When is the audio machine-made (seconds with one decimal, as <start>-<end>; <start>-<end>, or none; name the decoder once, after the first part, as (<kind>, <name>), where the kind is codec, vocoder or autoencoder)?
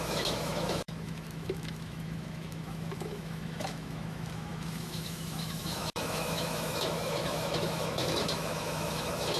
0.0-9.4 (autoencoder, DAC-VAE)